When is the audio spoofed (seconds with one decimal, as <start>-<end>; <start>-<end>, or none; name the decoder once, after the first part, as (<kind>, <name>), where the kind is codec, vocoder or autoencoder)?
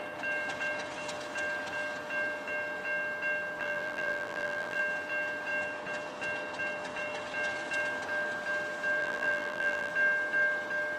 3.6-4.8 (vocoder, BigVGAN v2); 9.0-9.9